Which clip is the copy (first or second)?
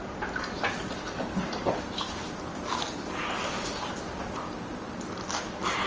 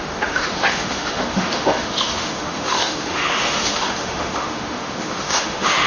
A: second